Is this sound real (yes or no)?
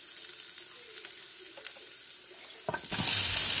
yes